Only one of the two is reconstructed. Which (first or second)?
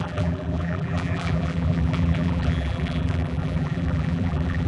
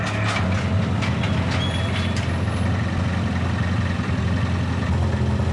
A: first